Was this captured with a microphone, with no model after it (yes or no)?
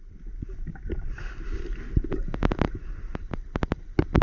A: yes